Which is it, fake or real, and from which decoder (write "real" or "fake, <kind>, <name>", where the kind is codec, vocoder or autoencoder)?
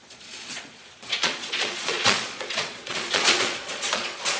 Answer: fake, vocoder, Vocos